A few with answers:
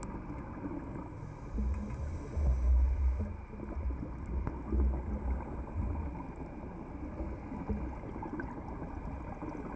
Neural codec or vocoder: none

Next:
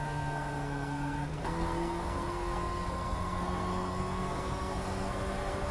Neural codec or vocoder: codec, SNAC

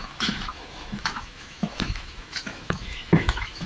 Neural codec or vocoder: autoencoder, DAC-VAE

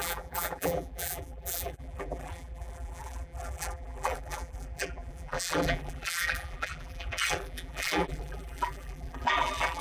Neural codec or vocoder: vocoder, BigVGAN v2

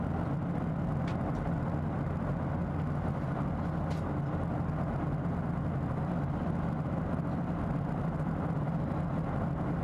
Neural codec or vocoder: none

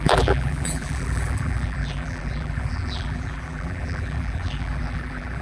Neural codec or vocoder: vocoder, BigVGAN v2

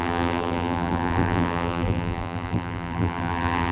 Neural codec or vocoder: vocoder, BigVGAN v2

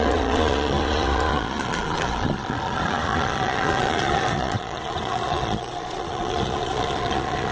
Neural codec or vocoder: vocoder, Vocos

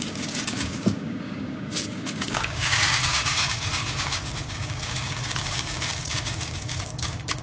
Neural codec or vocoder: codec, DAC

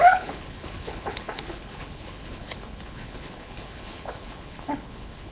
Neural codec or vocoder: codec, HILCodec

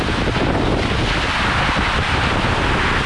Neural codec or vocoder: none